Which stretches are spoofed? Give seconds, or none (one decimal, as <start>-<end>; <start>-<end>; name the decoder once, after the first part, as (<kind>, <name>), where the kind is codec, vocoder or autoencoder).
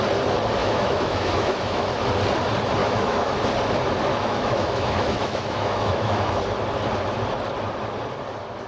0.6-1.9 (autoencoder, DAC-VAE); 2.8-3.3; 4.1-6.4